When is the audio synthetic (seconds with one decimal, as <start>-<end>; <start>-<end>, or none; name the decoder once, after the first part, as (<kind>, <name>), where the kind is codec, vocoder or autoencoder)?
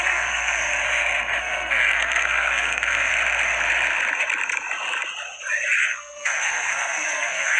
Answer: 0.0-0.6 (codec, SNAC); 1.4-3.1; 5.8-7.6